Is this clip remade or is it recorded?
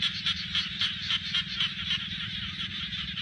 recorded